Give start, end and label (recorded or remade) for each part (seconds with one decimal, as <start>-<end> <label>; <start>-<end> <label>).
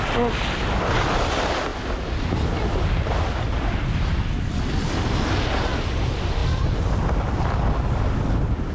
0.0-8.7 recorded